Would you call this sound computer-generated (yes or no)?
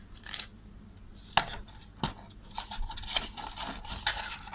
no